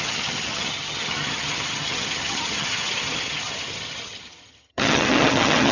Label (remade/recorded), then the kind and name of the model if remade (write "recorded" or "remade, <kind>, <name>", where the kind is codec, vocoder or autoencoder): remade, vocoder, HiFi-GAN